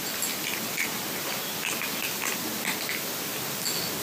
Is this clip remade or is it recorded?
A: recorded